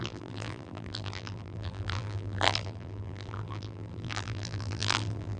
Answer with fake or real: fake